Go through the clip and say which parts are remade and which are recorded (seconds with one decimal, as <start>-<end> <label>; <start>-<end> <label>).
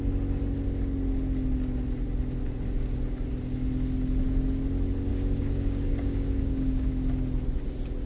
0.0-5.1 recorded; 5.1-6.9 remade; 6.9-8.1 recorded